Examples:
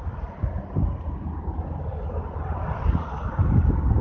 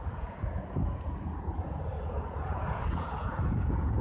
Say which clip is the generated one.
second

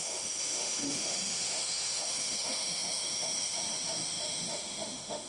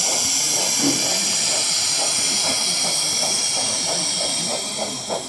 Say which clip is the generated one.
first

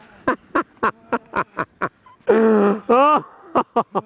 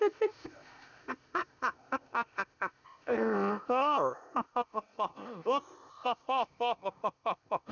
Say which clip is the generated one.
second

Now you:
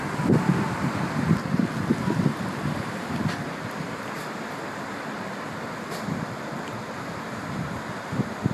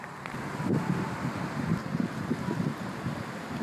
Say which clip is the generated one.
first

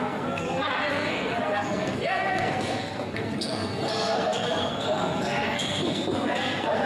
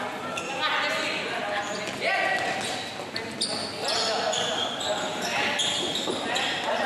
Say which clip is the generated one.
first